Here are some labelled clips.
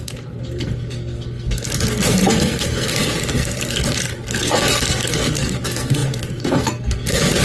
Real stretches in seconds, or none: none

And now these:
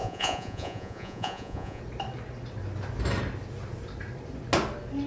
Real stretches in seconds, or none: 1.8-5.1

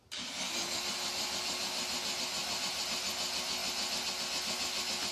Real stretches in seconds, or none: 0.0-5.1